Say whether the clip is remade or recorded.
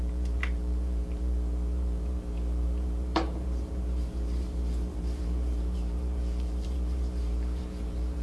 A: remade